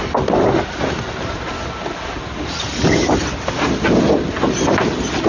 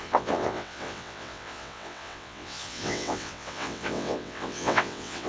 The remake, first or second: second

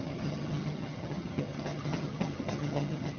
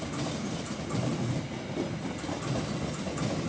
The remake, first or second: first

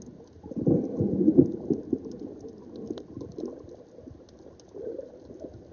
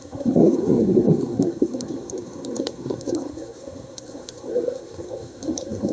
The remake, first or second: second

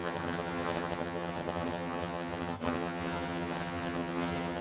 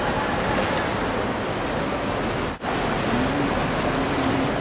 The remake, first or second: first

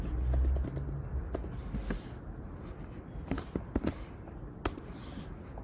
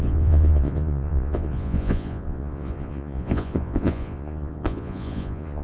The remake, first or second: second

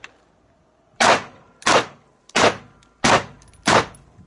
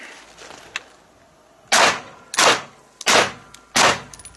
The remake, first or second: first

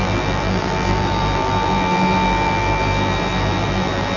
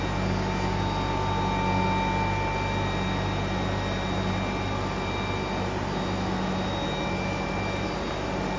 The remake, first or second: first